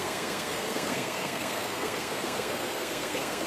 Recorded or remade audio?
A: remade